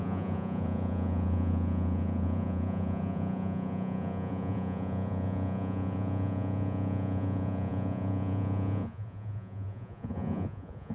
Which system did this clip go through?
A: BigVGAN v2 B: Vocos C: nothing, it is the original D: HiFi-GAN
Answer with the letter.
B